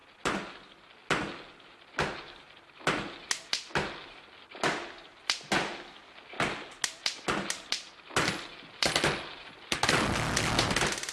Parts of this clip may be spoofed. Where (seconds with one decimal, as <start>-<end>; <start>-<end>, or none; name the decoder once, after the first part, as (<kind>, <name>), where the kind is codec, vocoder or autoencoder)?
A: none